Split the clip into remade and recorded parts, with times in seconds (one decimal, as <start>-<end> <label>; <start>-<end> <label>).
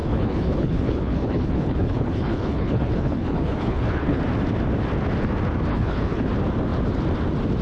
0.0-4.2 remade; 4.2-5.7 recorded; 5.7-6.3 remade; 6.3-7.6 recorded